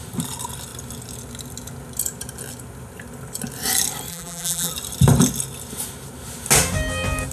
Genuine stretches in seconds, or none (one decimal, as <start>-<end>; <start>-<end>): 0.0-4.1; 4.7-7.3